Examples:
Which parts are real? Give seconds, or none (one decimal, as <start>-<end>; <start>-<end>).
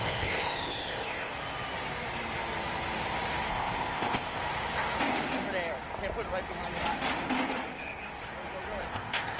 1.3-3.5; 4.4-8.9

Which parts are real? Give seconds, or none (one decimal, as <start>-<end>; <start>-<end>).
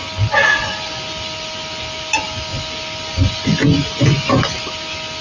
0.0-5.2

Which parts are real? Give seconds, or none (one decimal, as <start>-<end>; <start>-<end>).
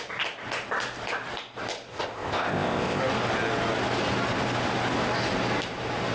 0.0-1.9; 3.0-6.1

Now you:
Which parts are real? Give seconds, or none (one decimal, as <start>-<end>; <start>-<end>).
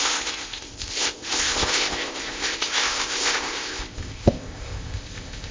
none